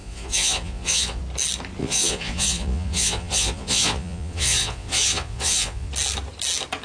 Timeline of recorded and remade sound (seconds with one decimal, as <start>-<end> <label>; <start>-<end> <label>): 0.0-1.2 remade; 1.2-1.8 recorded; 1.8-5.9 remade; 5.9-6.8 recorded